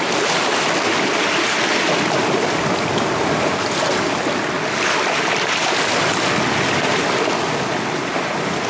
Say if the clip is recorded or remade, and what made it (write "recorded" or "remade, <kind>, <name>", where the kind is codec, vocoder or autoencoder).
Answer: recorded